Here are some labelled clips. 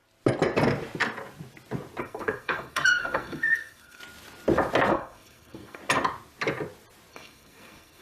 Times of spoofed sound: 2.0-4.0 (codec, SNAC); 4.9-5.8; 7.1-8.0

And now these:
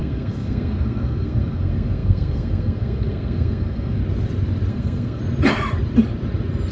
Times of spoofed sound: 0.0-4.0 (codec, SNAC); 4.7-5.2

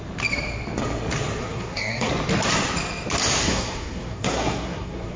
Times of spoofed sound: 1.4-2.1 (codec, SNAC); 3.4-5.2

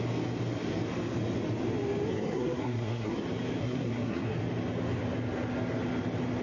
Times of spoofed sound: 2.1-3.2 (codec, SNAC); 3.6-4.4

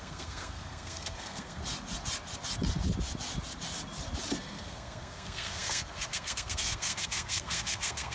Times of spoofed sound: 0.0-1.6 (codec, SNAC); 4.4-8.1